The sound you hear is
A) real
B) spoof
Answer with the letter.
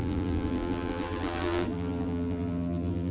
B